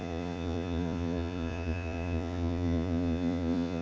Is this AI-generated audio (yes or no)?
yes